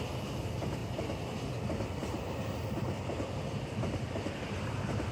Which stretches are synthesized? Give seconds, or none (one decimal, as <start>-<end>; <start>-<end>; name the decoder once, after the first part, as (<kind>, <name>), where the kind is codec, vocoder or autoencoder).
2.0-3.0 (vocoder, BigVGAN v2)

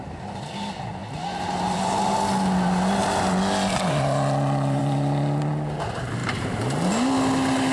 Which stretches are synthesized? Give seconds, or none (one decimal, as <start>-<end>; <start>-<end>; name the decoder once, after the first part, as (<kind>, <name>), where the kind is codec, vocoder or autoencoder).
1.0-2.2 (vocoder, BigVGAN v2); 6.2-6.9

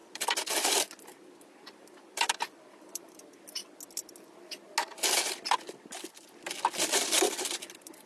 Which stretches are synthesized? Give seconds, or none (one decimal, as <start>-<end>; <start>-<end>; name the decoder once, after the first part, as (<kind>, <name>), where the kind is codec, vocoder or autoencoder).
0.0-3.2 (vocoder, BigVGAN v2)

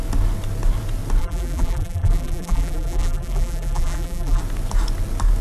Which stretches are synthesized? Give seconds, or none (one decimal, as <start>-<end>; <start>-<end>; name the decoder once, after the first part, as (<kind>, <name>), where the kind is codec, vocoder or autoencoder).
1.2-4.4 (vocoder, BigVGAN v2)